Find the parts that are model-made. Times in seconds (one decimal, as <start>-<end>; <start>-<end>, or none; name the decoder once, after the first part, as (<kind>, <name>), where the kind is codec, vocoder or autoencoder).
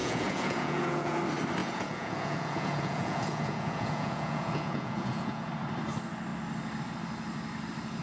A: 0.0-1.2 (vocoder, Vocos); 1.6-5.5